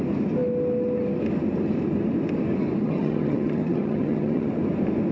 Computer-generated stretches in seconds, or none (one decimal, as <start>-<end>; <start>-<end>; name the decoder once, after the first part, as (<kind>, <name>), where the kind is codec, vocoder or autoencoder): 2.8-4.5 (vocoder, HiFi-GAN)